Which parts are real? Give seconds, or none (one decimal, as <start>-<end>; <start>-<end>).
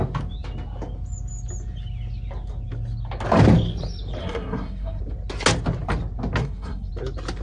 0.0-4.2; 5.0-6.4; 6.9-7.4